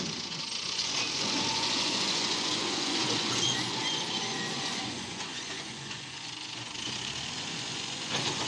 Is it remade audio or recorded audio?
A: remade